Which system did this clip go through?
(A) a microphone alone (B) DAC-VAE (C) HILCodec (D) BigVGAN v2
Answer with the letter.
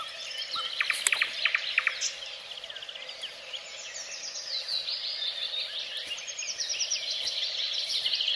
A